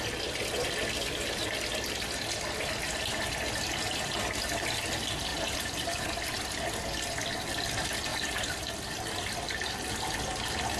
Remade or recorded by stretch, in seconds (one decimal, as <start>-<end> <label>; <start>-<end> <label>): 0.0-5.3 recorded; 5.3-6.0 remade; 6.0-8.1 recorded; 8.1-9.8 remade; 9.8-10.8 recorded